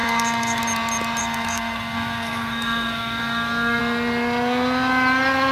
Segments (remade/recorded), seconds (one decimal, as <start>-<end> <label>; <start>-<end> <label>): 0.0-0.6 remade; 0.6-1.2 recorded; 1.2-3.8 remade; 3.8-5.5 recorded